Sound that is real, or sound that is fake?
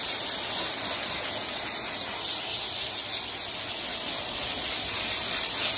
real